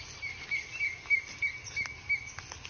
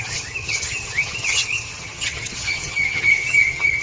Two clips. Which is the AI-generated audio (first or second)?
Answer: second